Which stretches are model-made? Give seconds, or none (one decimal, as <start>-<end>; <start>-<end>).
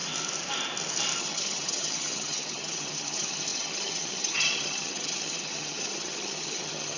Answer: 1.2-7.0